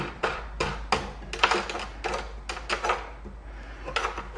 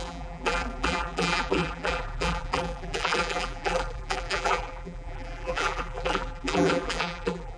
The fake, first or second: second